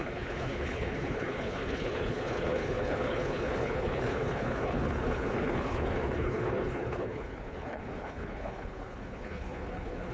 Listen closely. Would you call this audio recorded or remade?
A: remade